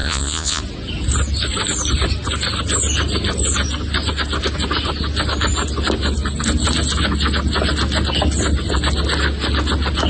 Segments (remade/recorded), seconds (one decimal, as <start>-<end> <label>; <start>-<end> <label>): 0.0-0.6 remade; 0.6-10.1 recorded